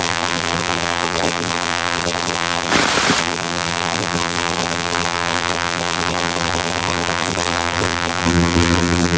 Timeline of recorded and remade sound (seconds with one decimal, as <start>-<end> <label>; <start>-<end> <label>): 0.0-2.7 remade; 2.7-3.2 recorded; 3.2-9.2 remade